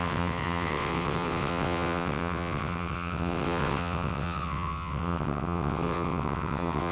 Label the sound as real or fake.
fake